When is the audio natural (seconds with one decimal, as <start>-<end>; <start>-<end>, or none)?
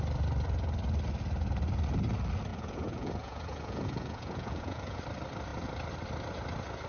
0.0-2.5; 5.0-6.9